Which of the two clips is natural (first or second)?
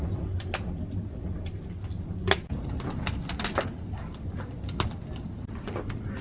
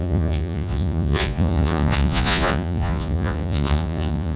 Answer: first